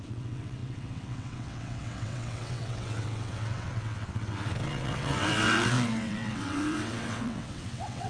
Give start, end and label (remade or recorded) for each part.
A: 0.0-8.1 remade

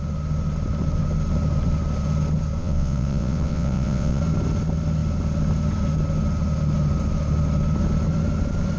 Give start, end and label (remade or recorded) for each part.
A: 0.0-2.6 recorded; 2.6-4.2 remade; 4.2-8.8 recorded

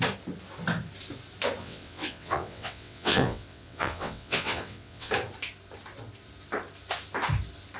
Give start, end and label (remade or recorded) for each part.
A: 0.0-1.6 recorded; 1.6-5.1 remade; 5.1-7.8 recorded

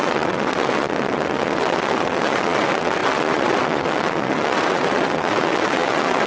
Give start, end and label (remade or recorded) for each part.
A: 0.0-6.3 remade

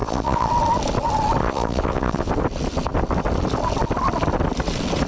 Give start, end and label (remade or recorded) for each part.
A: 0.0-0.5 remade; 0.5-1.4 recorded; 1.4-2.3 remade; 2.3-5.1 recorded